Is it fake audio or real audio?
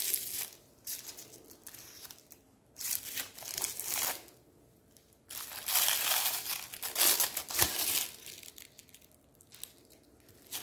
real